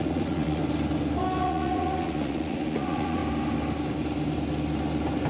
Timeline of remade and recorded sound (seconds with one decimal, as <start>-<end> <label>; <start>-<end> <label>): 0.0-0.6 remade; 0.6-1.4 recorded; 1.4-3.2 remade; 3.2-5.3 recorded